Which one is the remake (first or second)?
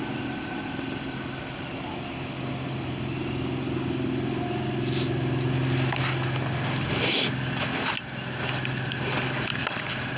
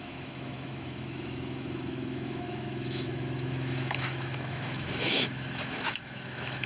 second